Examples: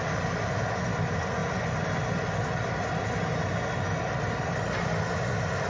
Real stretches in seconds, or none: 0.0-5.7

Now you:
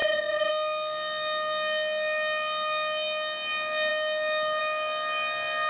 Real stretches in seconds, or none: 0.5-5.7

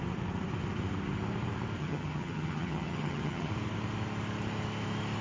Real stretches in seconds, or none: 0.0-1.8; 3.5-5.2